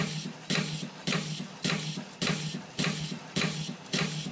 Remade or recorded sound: recorded